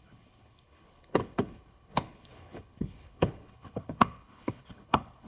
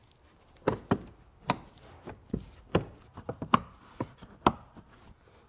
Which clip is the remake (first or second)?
first